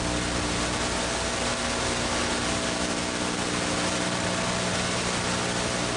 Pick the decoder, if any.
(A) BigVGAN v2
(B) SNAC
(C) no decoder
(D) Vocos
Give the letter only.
C